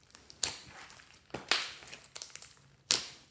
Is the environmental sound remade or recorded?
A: recorded